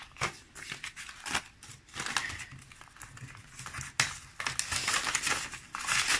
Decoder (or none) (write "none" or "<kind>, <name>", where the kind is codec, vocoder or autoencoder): none